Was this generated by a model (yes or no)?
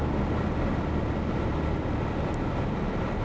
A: no